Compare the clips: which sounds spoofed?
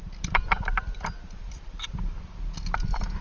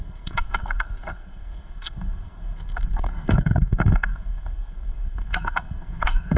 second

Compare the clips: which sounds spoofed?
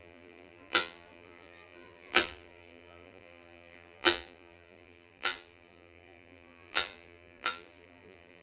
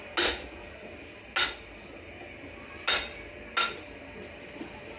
first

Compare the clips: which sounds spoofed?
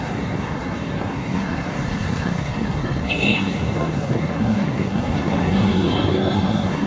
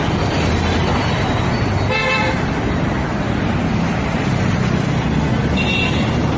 first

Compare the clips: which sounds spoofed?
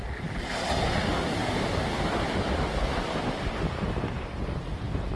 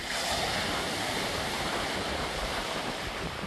second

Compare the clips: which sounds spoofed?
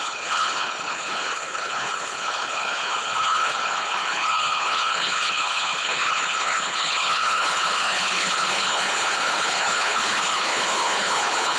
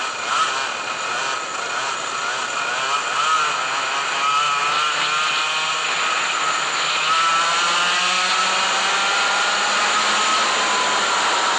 first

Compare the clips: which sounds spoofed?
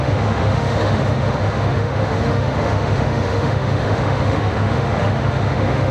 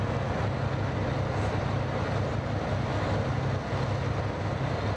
first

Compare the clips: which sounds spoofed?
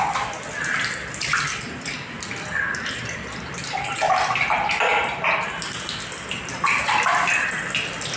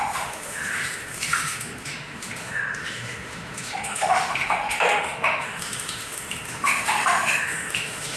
second